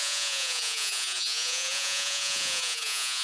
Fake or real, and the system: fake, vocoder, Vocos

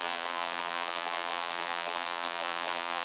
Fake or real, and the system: fake, vocoder, BigVGAN v2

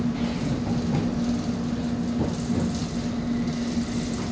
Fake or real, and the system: real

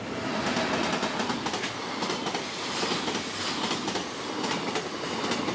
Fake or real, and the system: real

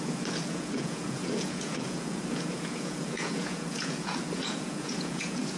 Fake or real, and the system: fake, vocoder, Vocos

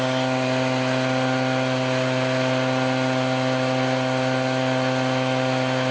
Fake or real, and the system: real